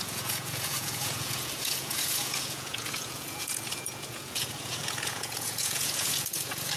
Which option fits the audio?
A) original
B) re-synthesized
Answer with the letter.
B